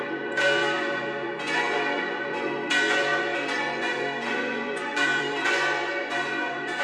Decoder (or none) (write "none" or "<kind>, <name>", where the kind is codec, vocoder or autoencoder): vocoder, Vocos